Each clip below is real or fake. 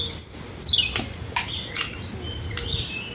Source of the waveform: real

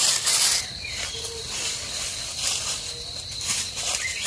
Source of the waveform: real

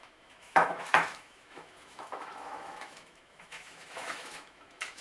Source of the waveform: fake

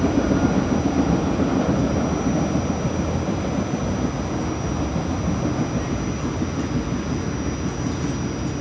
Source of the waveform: real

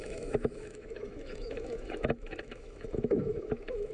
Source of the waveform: fake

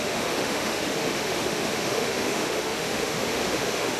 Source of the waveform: fake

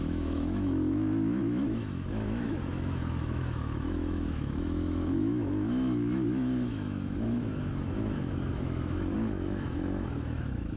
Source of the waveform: fake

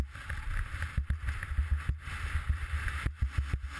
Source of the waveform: real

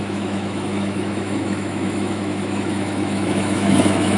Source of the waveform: fake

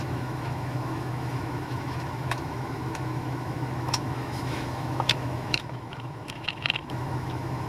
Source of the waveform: fake